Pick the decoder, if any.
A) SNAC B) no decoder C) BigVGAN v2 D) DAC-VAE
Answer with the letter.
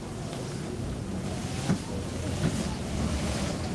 C